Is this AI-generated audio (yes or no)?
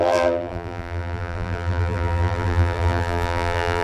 yes